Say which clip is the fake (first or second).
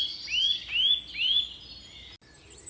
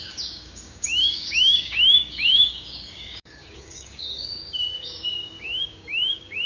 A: second